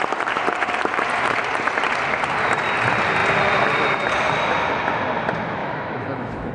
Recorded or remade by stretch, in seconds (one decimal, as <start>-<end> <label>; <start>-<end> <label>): 0.0-5.6 recorded; 5.6-6.5 remade